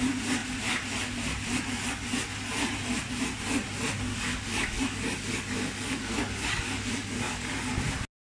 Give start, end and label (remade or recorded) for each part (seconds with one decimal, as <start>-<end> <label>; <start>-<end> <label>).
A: 0.0-4.1 recorded; 4.1-7.8 remade; 7.8-8.3 recorded

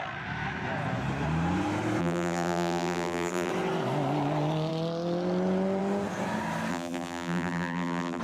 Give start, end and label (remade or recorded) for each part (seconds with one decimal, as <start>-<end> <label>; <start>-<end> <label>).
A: 0.0-2.0 recorded; 2.0-3.5 remade; 3.5-6.7 recorded; 6.7-8.2 remade

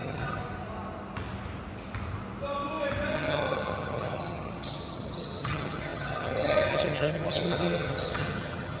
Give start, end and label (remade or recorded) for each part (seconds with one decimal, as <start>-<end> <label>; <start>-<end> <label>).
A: 0.0-0.4 remade; 0.4-3.1 recorded; 3.1-8.8 remade

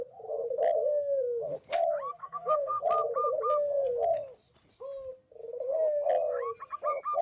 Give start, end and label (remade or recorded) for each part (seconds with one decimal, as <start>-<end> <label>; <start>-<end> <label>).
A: 0.0-2.2 recorded; 2.2-2.8 remade; 2.8-7.2 recorded